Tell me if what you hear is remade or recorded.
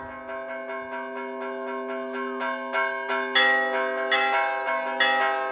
recorded